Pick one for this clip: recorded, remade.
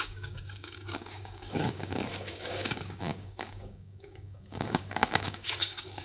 remade